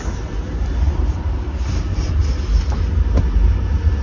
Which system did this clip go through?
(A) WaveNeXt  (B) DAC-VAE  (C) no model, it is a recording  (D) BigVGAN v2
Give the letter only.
C